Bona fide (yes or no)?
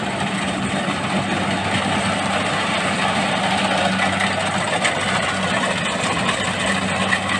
yes